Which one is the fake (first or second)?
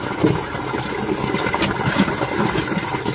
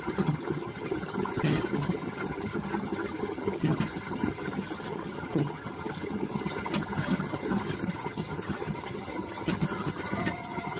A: second